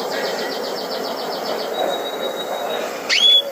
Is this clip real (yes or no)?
no